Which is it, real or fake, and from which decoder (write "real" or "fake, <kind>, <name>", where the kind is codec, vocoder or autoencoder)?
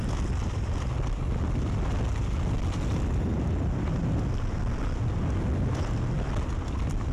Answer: real